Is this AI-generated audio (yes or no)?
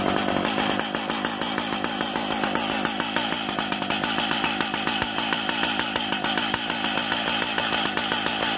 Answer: no